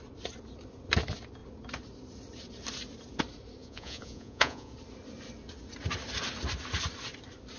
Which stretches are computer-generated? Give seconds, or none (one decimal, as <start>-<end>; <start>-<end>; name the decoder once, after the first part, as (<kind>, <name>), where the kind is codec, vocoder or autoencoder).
3.6-4.7 (vocoder, Vocos)